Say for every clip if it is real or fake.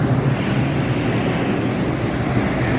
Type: real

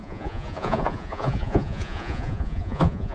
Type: fake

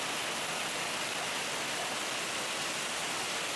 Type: real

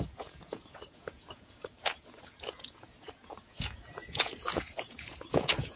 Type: fake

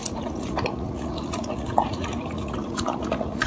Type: fake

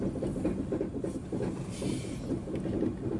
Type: real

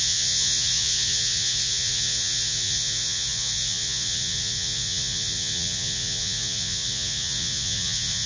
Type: fake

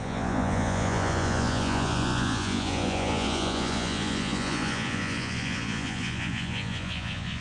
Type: fake